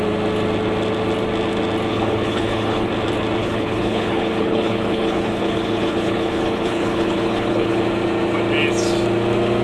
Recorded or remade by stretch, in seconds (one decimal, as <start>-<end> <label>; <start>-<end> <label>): 0.0-1.9 recorded; 1.9-2.9 remade; 2.9-3.4 recorded; 3.4-7.8 remade; 7.8-9.6 recorded